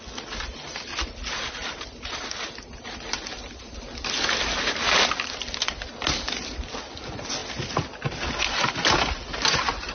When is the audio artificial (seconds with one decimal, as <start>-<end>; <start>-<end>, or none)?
1.6-3.6